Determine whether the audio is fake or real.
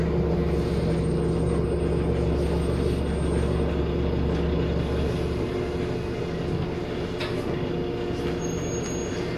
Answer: real